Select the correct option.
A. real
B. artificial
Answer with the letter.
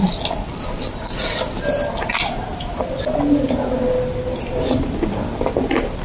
A